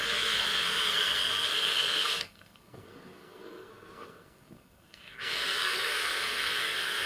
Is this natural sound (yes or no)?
no